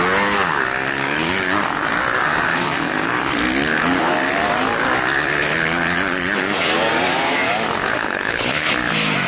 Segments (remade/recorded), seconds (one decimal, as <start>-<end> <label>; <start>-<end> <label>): 0.0-8.0 recorded; 8.0-8.7 remade; 8.7-9.3 recorded